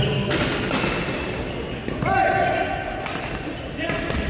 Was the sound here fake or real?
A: real